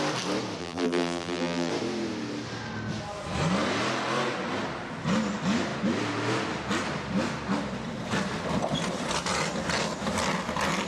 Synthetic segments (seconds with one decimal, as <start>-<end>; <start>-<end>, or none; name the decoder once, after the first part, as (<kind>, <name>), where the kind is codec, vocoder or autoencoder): 0.6-1.7 (vocoder, BigVGAN v2)